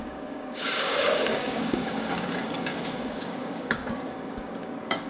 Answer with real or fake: fake